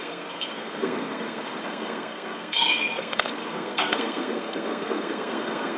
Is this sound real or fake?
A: fake